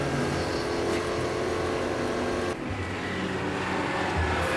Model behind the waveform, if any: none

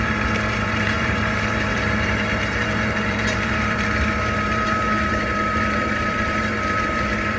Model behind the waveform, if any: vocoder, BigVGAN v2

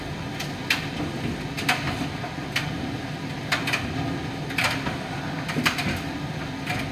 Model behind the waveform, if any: none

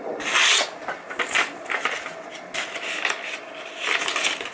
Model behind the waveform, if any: none